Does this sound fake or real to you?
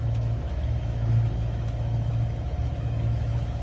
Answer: fake